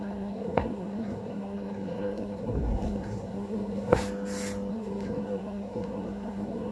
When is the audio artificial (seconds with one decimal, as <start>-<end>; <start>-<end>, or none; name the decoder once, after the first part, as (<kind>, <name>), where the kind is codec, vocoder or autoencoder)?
0.0-4.0 (codec, SNAC); 4.7-6.7